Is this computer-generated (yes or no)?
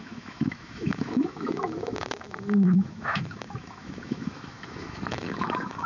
yes